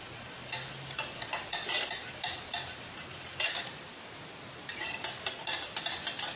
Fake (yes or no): no